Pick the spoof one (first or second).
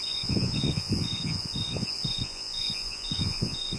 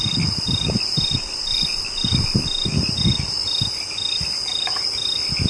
first